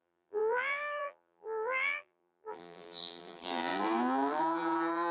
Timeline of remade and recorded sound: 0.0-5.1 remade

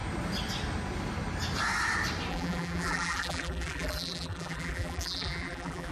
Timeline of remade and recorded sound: 0.0-2.3 recorded; 2.3-5.9 remade